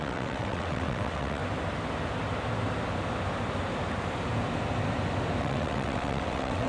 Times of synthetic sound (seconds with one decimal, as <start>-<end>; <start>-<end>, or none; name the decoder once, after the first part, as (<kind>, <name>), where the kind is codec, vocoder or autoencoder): 0.0-1.4 (vocoder, WaveNeXt); 5.4-6.7